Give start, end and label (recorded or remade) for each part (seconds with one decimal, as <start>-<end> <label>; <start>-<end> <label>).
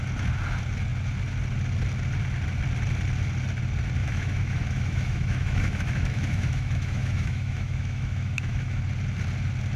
0.0-4.0 recorded; 4.0-8.8 remade; 8.8-9.8 recorded